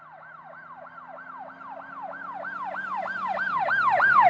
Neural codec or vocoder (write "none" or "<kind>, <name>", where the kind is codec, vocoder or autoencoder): none